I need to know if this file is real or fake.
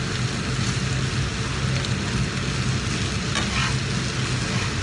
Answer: real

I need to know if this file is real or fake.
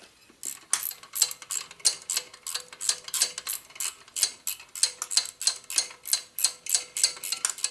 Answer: real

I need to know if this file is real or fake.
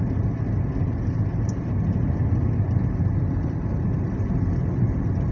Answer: real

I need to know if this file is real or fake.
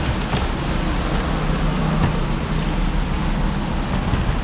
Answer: real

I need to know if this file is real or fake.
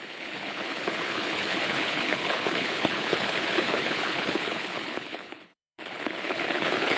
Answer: fake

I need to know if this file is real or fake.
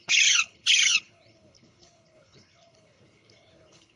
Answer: fake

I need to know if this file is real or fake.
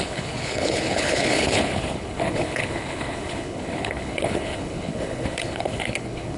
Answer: fake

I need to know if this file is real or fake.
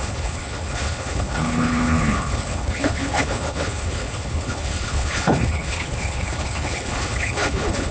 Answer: fake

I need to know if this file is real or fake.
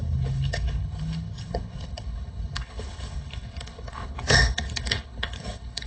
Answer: fake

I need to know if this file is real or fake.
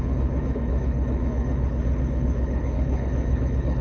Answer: fake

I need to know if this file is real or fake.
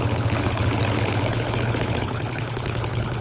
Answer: fake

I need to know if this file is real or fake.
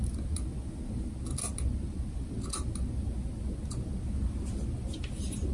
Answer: real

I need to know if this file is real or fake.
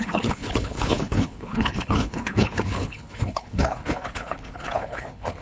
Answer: fake